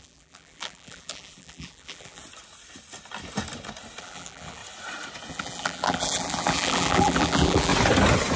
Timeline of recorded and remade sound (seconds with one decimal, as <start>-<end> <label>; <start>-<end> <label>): 0.0-2.2 remade; 2.2-4.0 recorded; 4.0-4.6 remade; 4.6-5.3 recorded; 5.3-7.7 remade; 7.7-8.4 recorded